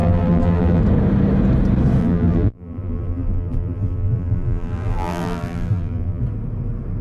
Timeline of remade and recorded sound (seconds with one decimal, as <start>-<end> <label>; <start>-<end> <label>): 0.0-0.8 remade; 0.8-2.0 recorded; 2.0-6.2 remade; 6.2-7.0 recorded